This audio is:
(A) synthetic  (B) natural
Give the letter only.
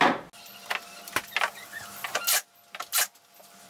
B